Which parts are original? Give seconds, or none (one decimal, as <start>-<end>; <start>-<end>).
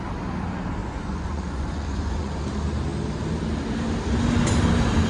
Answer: 0.0-0.8; 2.4-5.1